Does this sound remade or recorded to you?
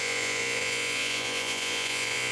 remade